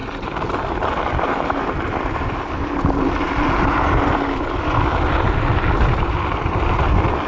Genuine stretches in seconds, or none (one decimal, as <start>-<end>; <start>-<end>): 0.0-7.3